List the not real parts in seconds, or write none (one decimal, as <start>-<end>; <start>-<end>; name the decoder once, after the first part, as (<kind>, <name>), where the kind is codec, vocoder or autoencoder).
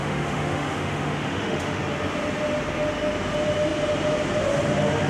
0.0-1.8 (autoencoder, DAC-VAE)